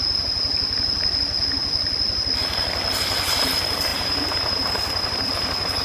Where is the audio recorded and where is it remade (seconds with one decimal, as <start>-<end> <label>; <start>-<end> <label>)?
0.0-3.9 recorded; 3.9-5.3 remade; 5.3-5.8 recorded